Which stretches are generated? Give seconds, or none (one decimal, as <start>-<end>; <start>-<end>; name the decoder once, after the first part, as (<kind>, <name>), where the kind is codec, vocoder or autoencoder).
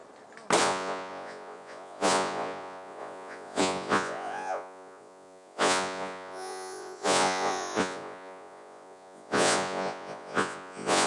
0.6-11.1 (vocoder, Vocos)